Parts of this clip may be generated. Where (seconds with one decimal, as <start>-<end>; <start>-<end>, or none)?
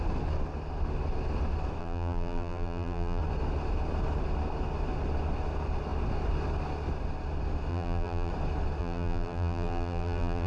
1.8-3.2; 7.7-8.3; 8.8-10.5